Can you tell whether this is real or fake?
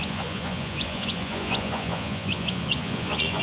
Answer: fake